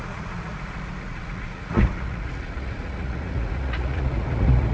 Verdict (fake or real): fake